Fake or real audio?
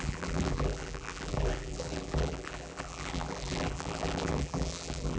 fake